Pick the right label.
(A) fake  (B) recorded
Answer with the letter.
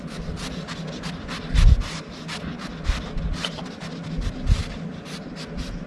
B